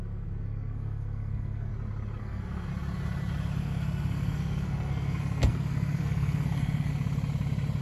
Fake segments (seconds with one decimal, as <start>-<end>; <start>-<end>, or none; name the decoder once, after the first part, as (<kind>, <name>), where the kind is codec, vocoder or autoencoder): 0.0-1.7 (codec, SNAC); 2.2-2.7; 3.6-6.9